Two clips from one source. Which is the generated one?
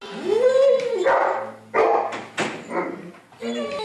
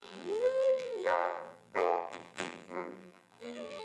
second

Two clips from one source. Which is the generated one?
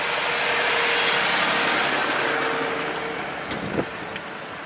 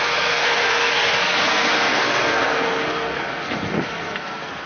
second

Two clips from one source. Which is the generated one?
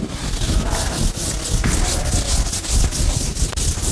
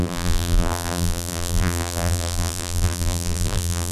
second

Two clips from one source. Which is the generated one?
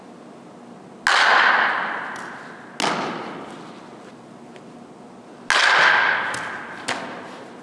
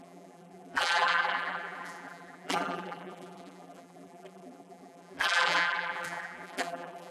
second